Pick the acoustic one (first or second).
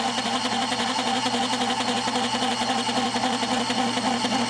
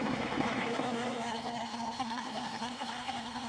first